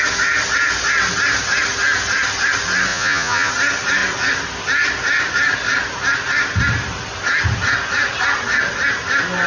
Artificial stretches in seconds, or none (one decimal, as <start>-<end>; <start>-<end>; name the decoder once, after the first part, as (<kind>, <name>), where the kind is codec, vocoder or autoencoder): 2.9-3.5 (vocoder, Vocos)